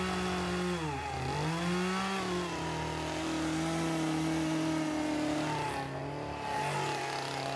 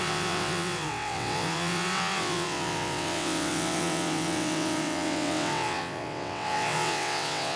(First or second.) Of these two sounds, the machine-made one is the second